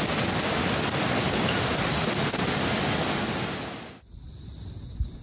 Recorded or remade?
recorded